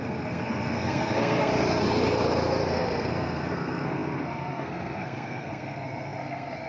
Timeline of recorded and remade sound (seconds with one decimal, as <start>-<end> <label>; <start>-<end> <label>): 0.0-1.5 remade; 1.5-2.7 recorded; 2.7-6.7 remade